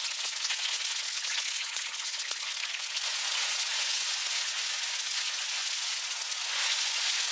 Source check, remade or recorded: remade